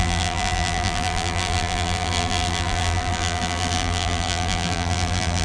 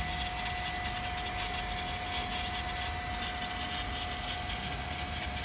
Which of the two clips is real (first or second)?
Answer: second